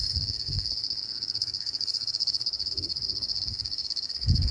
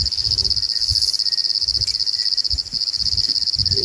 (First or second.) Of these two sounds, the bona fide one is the second